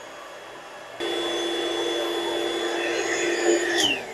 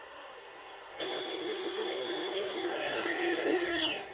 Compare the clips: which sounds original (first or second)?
first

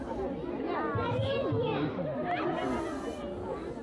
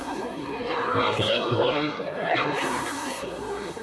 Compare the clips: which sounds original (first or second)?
first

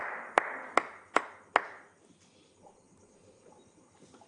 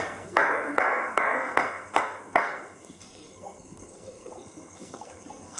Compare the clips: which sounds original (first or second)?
first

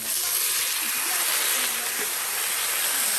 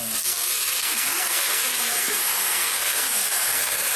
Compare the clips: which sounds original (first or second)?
first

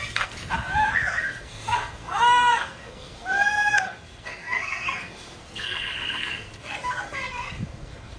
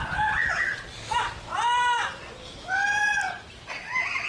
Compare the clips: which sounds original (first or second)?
second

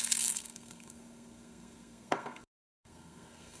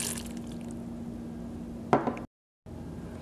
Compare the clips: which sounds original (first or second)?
second